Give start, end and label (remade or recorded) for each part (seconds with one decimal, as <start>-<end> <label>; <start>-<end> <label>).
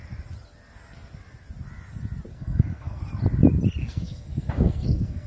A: 0.0-2.3 recorded; 2.3-3.0 remade; 3.0-3.8 recorded; 3.8-5.3 remade